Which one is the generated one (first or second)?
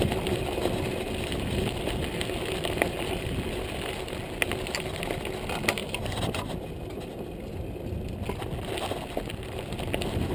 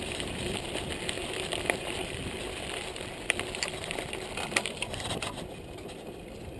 second